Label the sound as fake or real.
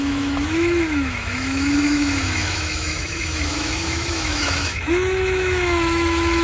fake